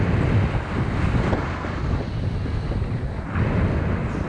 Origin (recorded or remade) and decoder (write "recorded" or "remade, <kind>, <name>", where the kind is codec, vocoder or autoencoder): recorded